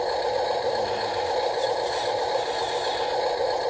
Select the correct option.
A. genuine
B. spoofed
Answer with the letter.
A